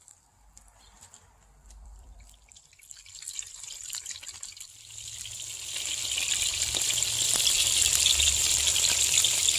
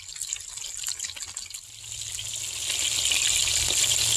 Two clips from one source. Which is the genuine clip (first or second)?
second